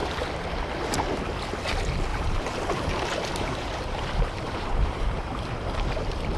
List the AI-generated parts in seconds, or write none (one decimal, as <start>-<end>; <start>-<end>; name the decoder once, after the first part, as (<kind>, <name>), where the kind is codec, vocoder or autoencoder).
2.1-5.5 (vocoder, BigVGAN v2)